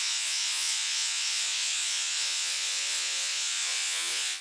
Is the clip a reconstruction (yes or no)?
yes